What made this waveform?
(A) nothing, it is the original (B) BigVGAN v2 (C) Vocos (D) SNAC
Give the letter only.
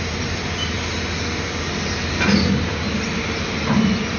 A